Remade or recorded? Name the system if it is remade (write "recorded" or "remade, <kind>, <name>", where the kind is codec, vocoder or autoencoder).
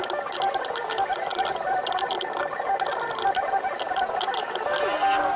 recorded